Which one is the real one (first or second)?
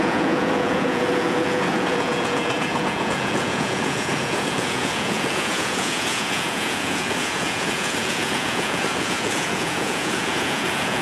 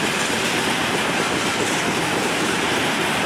second